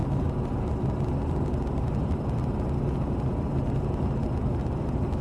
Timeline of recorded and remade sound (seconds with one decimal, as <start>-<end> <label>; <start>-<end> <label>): 0.0-5.2 recorded